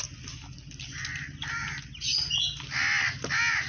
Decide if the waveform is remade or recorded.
recorded